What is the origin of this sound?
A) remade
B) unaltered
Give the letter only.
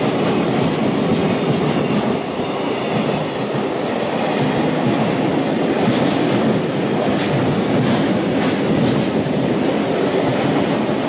B